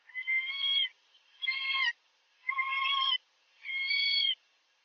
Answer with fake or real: real